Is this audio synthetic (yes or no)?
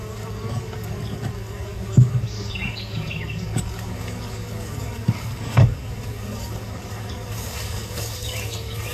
yes